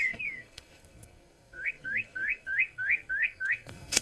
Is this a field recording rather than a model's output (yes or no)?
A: no